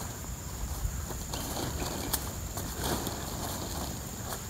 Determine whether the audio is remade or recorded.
recorded